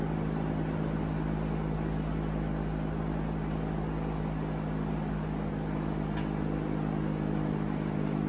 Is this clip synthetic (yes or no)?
no